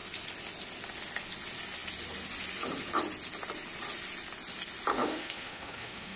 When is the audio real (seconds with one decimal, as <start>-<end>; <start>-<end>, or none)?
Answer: 0.0-4.9